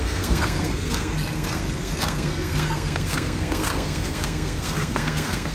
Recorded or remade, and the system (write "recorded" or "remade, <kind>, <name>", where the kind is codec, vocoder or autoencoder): remade, codec, SNAC